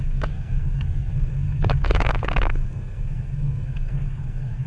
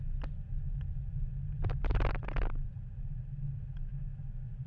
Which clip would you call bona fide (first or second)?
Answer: second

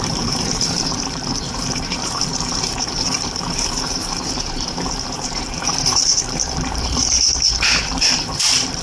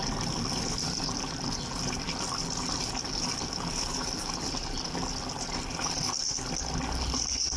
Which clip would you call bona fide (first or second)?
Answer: second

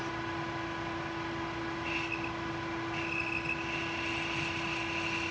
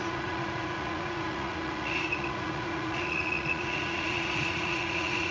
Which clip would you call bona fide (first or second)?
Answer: first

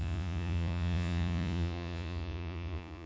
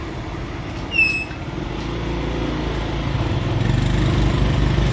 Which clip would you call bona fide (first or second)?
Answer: second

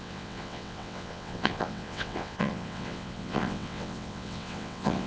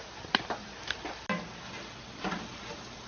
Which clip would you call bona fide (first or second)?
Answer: second